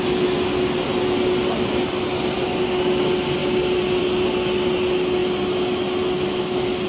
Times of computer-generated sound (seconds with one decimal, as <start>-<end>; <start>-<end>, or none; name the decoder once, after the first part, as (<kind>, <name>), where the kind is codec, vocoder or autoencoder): none